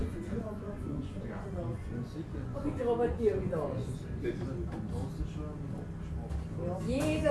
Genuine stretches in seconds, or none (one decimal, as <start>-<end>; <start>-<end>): 4.0-7.3